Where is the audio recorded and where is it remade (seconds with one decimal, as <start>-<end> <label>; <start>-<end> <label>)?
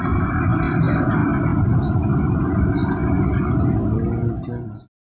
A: 0.0-5.2 recorded